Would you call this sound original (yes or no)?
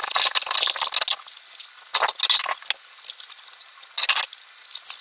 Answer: yes